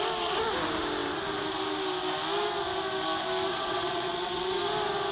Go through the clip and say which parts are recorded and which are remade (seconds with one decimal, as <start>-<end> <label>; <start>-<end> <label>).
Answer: 0.0-3.5 recorded; 3.5-4.6 remade; 4.6-5.1 recorded